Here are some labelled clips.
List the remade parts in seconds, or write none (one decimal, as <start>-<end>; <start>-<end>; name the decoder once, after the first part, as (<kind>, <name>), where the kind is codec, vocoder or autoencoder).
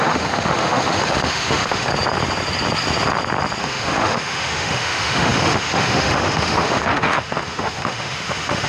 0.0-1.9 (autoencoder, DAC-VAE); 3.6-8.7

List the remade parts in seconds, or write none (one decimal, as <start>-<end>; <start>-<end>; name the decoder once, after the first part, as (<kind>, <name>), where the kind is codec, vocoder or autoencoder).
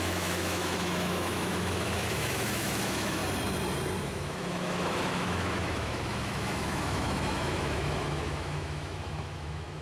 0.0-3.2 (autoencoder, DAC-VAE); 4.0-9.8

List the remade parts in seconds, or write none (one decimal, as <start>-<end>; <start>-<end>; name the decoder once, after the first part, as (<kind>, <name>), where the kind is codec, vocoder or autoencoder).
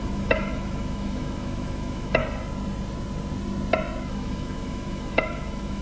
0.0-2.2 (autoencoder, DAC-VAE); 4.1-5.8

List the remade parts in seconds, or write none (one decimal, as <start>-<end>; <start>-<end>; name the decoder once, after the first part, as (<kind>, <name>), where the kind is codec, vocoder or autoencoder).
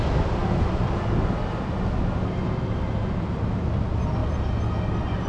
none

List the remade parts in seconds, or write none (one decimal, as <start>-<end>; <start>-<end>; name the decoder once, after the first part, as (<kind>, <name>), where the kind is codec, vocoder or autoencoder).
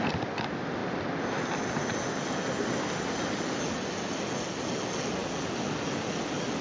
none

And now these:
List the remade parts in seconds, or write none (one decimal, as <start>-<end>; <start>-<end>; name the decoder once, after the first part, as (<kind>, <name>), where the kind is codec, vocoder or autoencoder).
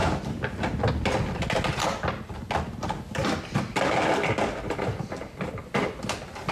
none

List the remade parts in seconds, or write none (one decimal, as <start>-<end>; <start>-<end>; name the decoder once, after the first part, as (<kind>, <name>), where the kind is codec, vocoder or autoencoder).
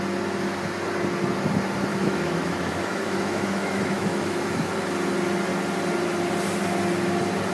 1.9-4.7 (autoencoder, DAC-VAE)